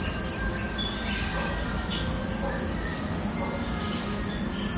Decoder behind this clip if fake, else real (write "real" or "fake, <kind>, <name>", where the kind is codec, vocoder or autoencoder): real